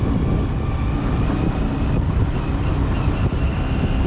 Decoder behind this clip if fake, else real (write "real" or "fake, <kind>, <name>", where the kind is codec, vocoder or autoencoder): real